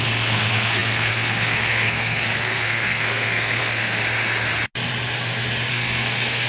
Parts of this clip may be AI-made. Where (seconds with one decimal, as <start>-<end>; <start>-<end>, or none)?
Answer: 0.0-4.0; 5.7-6.5